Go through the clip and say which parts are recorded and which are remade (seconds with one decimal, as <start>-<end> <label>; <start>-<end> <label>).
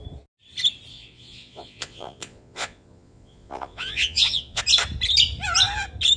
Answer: 0.0-0.9 recorded; 0.9-4.6 remade; 4.6-6.2 recorded